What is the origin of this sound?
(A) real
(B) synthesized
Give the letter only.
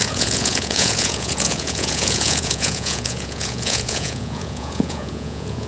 B